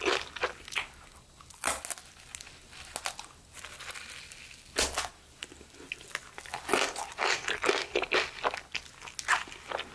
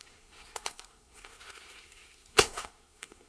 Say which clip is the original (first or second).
first